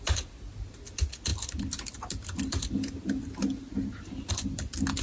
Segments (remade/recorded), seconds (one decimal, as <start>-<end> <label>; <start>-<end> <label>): 0.0-5.0 recorded